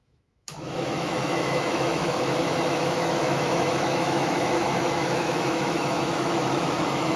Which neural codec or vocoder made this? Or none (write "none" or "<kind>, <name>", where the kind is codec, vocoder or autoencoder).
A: autoencoder, DAC-VAE